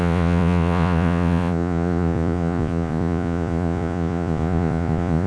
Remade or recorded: remade